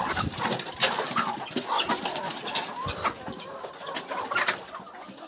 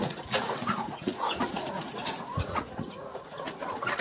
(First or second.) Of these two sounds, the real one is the first